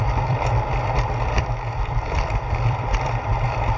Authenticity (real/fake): fake